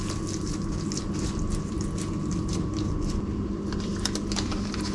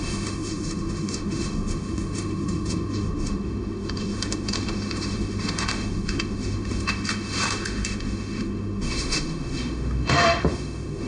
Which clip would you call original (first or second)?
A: first